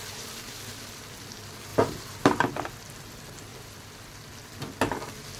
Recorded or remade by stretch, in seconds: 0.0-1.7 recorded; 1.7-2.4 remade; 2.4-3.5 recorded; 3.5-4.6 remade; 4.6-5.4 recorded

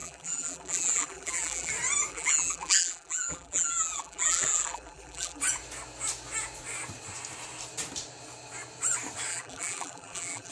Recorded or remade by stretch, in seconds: 0.0-1.7 remade; 1.7-2.1 recorded; 2.1-5.4 remade; 5.4-9.3 recorded; 9.3-10.5 remade

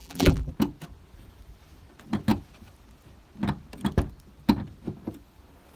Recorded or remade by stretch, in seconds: 0.0-0.5 remade; 0.5-5.8 recorded

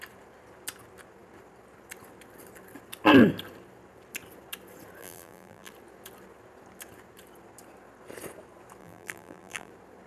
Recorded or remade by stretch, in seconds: 0.0-5.0 recorded; 5.0-5.7 remade; 5.7-8.8 recorded; 8.8-9.7 remade; 9.7-10.1 recorded

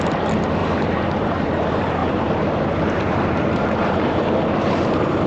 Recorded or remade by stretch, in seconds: 0.0-0.6 recorded; 0.6-1.6 remade; 1.6-2.0 recorded; 2.0-5.3 remade

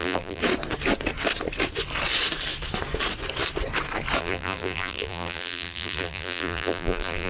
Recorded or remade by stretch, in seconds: 0.0-0.4 remade; 0.4-4.2 recorded; 4.2-7.3 remade

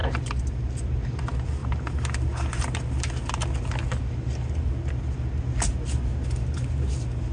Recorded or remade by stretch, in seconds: 0.0-7.3 recorded